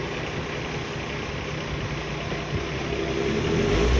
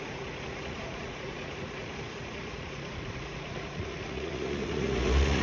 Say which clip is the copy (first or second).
second